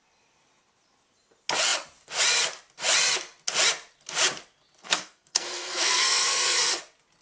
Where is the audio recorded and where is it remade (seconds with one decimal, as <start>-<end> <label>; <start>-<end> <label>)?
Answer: 0.0-4.8 recorded; 4.8-6.8 remade; 6.8-7.2 recorded

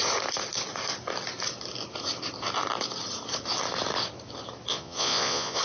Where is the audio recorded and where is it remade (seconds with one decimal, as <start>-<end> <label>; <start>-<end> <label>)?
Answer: 0.0-4.7 recorded; 4.7-5.6 remade

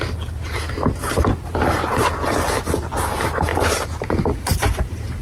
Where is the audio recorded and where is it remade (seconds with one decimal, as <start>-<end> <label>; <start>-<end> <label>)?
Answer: 0.0-1.0 recorded; 1.0-2.1 remade; 2.1-3.5 recorded; 3.5-5.2 remade

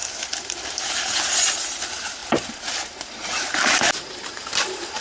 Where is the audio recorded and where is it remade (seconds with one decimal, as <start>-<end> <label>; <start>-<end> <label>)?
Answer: 0.0-5.0 recorded